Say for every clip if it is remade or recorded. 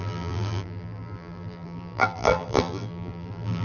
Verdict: remade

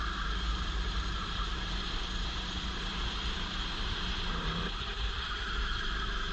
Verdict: remade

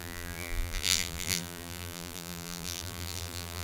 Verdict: remade